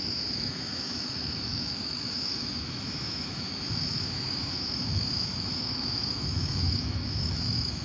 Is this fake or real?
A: fake